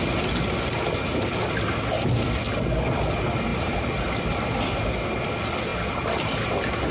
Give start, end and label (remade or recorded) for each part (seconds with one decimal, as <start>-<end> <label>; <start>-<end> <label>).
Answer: 0.0-6.9 recorded